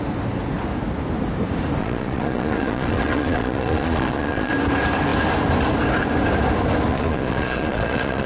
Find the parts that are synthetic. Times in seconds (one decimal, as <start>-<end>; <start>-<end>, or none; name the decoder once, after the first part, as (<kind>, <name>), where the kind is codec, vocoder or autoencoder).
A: 1.8-4.5 (vocoder, Vocos); 6.9-8.3